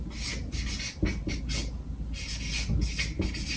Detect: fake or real real